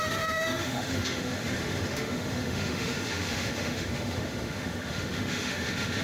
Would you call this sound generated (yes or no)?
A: yes